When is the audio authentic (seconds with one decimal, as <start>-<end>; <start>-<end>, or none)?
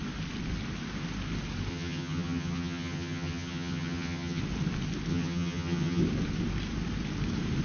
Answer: 0.0-1.7; 4.4-5.1; 6.0-7.6